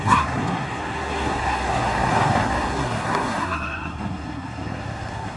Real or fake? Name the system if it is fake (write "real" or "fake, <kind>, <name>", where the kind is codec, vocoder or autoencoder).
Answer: fake, codec, SNAC